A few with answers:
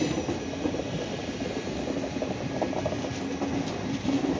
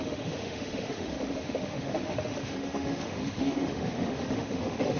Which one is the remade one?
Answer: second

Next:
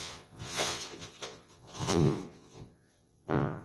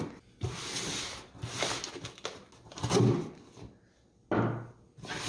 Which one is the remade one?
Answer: first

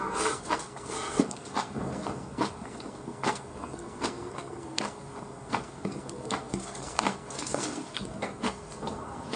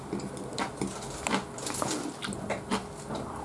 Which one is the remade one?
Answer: first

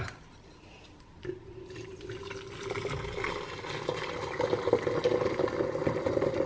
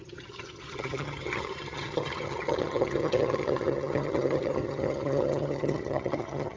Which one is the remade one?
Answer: second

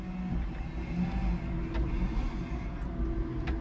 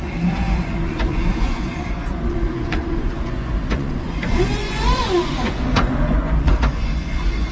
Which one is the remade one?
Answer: second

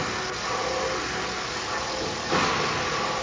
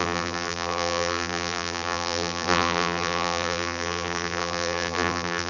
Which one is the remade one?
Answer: second